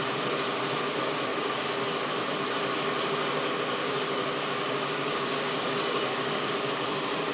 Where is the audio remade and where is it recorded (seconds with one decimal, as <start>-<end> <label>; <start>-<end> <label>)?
0.0-1.3 recorded; 1.3-2.1 remade; 2.1-3.8 recorded; 3.8-6.5 remade; 6.5-7.3 recorded